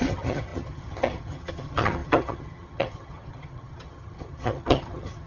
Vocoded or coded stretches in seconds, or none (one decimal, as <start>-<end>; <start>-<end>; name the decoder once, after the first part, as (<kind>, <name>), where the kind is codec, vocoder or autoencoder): 0.0-5.3 (vocoder, HiFi-GAN)